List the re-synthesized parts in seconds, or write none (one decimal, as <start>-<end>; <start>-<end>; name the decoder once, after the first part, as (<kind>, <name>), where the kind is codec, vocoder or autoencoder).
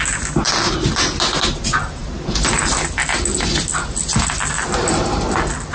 none